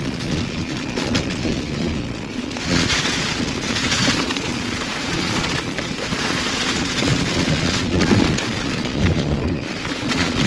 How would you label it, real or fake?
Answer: fake